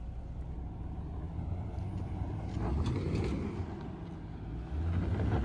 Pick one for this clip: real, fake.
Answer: real